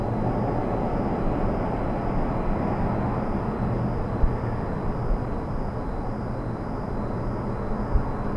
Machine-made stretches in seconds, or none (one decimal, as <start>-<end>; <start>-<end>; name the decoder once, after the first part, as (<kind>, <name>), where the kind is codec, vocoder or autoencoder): none